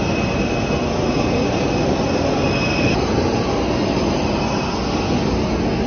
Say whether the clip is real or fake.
real